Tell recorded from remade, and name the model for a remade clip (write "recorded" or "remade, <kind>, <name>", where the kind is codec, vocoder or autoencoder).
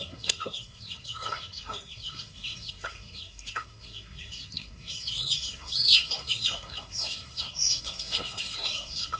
remade, codec, SNAC